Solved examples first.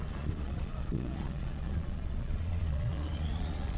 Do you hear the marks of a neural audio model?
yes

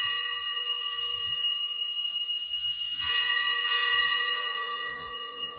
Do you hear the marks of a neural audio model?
yes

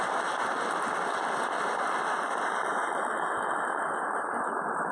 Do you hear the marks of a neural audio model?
no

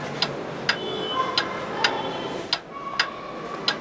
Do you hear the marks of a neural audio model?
no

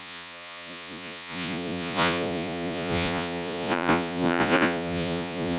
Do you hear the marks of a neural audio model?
yes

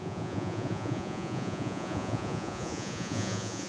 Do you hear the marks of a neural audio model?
yes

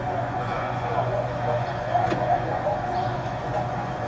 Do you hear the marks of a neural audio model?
yes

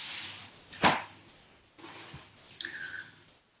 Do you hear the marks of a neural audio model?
no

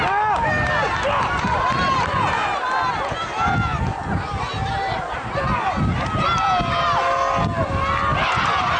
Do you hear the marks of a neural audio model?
no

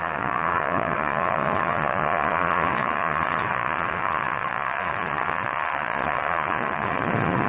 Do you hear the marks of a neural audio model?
yes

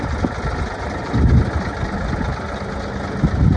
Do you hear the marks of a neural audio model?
no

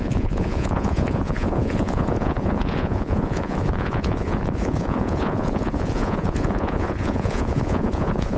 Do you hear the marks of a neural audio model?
yes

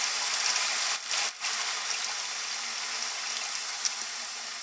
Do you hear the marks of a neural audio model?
no